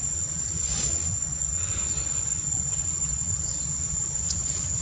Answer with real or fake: fake